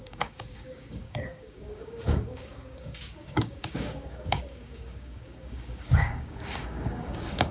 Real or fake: fake